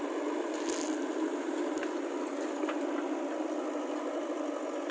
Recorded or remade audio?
recorded